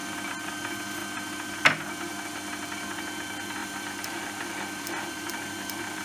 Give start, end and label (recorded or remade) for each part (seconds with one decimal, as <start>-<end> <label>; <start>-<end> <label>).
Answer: 0.0-0.5 remade; 0.5-3.6 recorded; 3.6-6.0 remade